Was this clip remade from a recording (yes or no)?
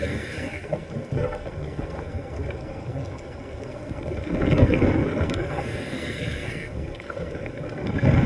yes